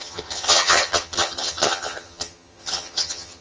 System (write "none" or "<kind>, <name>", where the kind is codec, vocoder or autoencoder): vocoder, HiFi-GAN